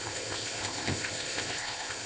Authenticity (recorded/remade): remade